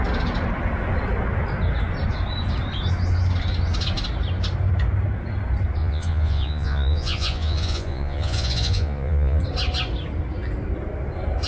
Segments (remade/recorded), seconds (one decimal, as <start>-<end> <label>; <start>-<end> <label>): 0.0-5.8 recorded; 5.8-9.4 remade; 9.4-11.5 recorded

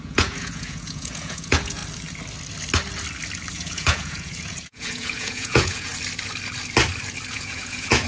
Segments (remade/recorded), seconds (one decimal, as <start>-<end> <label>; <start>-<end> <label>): 0.0-1.8 remade; 1.8-3.5 recorded; 3.5-5.9 remade; 5.9-7.3 recorded; 7.3-8.1 remade

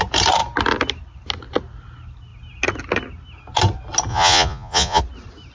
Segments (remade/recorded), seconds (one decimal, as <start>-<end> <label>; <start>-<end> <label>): 0.0-4.1 recorded; 4.1-5.0 remade; 5.0-5.5 recorded

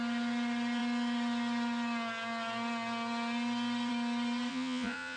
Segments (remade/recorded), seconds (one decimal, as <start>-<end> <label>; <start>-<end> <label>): 0.0-4.5 recorded; 4.5-5.2 remade

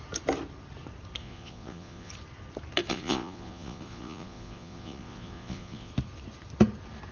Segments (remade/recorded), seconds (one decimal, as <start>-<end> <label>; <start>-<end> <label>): 0.0-1.2 recorded; 1.2-2.1 remade; 2.1-2.9 recorded; 2.9-5.9 remade; 5.9-7.1 recorded

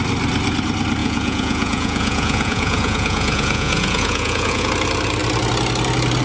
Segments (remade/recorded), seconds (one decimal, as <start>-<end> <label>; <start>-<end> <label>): 0.0-1.0 recorded; 1.0-4.7 remade; 4.7-6.2 recorded

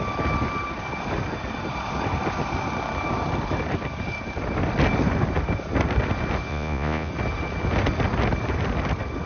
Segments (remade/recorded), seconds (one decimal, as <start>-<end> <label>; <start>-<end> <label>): 0.0-6.5 recorded; 6.5-7.1 remade; 7.1-9.3 recorded